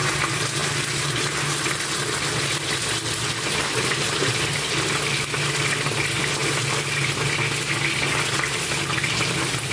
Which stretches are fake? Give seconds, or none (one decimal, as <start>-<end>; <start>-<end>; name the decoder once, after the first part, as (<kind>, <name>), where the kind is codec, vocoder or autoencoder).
none